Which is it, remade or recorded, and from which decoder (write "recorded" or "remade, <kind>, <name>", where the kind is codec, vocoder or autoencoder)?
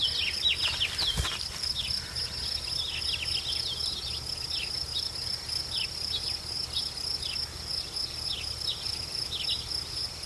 recorded